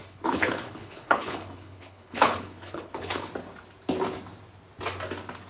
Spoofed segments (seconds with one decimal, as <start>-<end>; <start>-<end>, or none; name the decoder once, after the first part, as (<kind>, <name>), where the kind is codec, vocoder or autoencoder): 0.0-3.3 (codec, HILCodec)